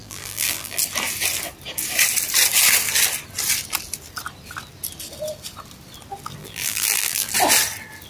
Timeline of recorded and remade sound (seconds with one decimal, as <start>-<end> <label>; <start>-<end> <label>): 0.0-0.8 remade; 0.8-6.4 recorded; 6.4-7.3 remade; 7.3-8.1 recorded